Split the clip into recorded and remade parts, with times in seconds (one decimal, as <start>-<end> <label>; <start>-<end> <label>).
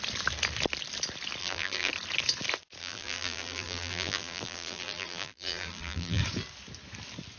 0.0-1.4 recorded; 1.4-1.9 remade; 1.9-2.8 recorded; 2.8-6.2 remade; 6.2-7.4 recorded